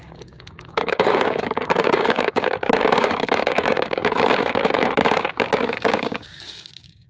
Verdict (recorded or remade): remade